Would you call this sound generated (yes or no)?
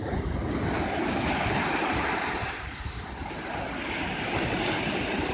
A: no